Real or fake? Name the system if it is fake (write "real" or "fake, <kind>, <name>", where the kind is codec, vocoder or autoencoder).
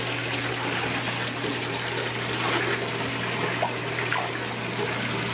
real